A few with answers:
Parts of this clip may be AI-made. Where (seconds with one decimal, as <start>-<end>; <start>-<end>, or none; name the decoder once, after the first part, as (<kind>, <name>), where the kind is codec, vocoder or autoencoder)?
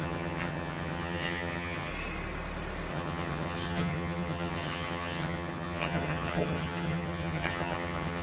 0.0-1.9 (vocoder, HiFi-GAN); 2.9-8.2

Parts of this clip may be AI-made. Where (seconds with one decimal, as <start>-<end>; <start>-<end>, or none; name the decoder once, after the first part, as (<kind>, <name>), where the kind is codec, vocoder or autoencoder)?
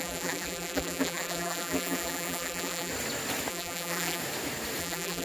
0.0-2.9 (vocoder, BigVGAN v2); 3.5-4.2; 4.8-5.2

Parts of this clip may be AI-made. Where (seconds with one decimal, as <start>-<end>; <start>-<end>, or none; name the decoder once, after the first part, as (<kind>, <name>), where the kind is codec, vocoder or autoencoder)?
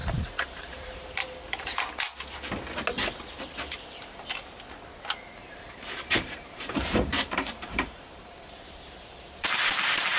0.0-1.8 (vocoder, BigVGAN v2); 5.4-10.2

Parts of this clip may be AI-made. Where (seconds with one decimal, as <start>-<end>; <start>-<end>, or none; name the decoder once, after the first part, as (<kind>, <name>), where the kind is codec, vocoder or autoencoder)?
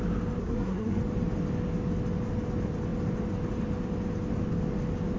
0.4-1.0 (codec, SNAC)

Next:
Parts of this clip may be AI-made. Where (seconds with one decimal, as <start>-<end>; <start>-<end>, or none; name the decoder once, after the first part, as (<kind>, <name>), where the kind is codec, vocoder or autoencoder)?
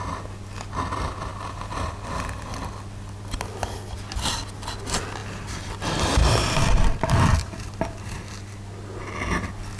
none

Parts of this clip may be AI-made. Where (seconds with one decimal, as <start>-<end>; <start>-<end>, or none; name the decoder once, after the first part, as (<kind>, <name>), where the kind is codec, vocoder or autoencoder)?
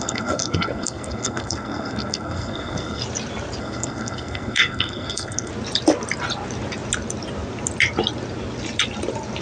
0.0-3.0 (codec, SNAC); 3.6-5.5